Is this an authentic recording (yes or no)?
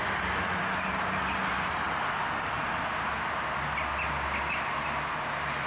yes